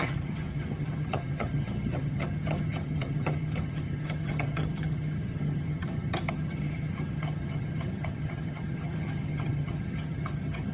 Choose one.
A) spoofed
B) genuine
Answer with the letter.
A